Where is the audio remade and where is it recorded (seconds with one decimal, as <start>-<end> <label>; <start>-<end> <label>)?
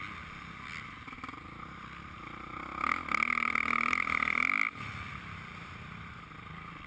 0.0-5.1 recorded; 5.1-5.8 remade; 5.8-6.9 recorded